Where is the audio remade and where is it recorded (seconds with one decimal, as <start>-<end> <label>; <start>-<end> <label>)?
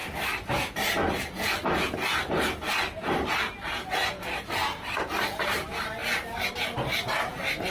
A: 0.0-4.6 recorded; 4.6-5.4 remade; 5.4-7.7 recorded